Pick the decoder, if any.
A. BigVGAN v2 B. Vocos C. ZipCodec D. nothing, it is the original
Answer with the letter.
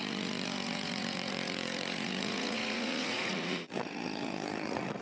B